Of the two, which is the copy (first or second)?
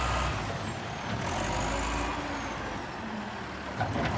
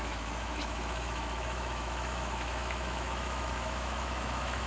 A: second